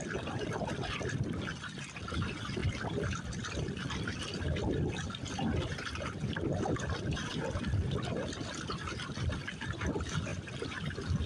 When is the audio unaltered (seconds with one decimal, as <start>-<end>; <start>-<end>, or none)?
0.0-2.6; 7.6-11.3